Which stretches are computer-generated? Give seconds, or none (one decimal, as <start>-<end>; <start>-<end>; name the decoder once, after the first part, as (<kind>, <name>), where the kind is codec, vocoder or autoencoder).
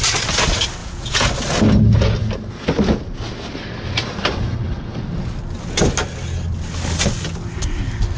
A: 0.8-1.3 (vocoder, Vocos)